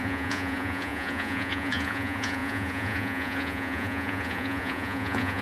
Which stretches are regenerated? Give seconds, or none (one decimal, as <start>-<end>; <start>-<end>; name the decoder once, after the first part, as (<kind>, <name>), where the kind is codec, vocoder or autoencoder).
0.0-5.4 (vocoder, Vocos)